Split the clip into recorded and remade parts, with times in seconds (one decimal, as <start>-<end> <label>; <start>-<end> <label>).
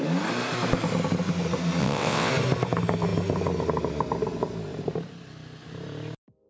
0.0-1.8 recorded; 1.8-2.3 remade; 2.3-6.5 recorded